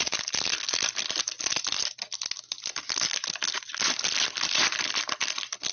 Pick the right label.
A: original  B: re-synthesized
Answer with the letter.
A